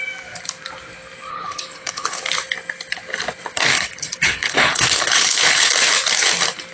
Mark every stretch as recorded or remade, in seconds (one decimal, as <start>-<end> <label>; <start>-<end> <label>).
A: 0.0-1.3 recorded; 1.3-2.2 remade; 2.2-3.7 recorded; 3.7-5.7 remade; 5.7-6.7 recorded